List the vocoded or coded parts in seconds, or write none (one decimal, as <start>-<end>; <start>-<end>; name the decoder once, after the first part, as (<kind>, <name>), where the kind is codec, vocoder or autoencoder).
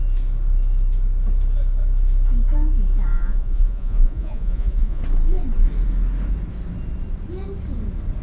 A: 3.1-5.0 (vocoder, Vocos)